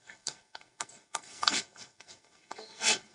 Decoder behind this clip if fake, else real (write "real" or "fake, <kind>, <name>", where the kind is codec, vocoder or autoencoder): fake, codec, SNAC